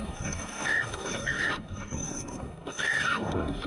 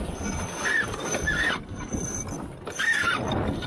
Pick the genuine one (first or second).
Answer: second